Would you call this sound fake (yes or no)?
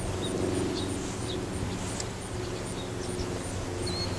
no